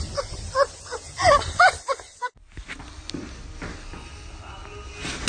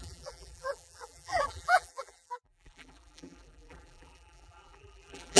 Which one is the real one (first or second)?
first